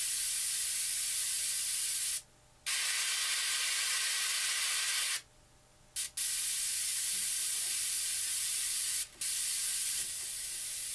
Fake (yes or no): no